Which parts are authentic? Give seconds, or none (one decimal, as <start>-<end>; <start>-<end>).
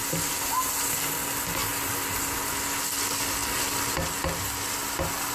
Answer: 0.0-5.3